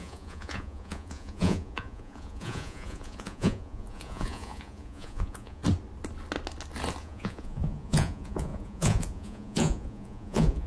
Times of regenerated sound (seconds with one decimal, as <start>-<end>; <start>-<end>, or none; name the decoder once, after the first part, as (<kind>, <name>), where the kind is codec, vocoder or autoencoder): 0.0-5.6 (vocoder, Vocos); 7.0-10.7